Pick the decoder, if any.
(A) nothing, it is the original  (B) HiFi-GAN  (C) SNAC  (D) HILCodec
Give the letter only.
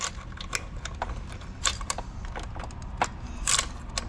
A